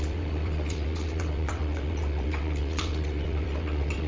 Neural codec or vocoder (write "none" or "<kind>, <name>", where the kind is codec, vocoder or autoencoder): vocoder, WaveNeXt